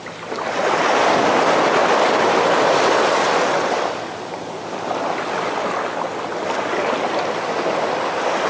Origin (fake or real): real